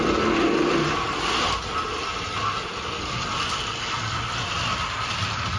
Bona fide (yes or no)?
yes